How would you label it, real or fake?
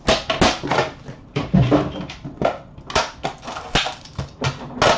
real